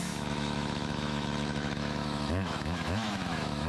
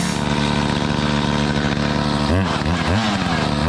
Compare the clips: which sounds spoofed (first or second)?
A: first